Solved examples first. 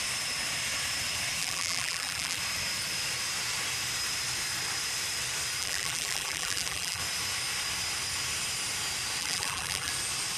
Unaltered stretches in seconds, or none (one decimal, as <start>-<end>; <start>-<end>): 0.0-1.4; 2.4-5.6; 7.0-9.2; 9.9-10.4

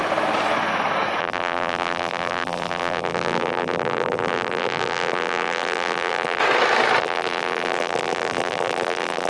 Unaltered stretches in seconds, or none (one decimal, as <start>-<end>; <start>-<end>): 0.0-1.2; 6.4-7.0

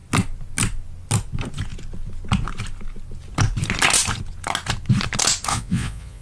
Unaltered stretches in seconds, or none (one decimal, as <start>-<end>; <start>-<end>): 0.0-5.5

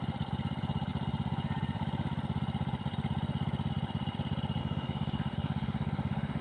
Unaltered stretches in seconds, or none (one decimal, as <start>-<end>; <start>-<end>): 0.0-4.6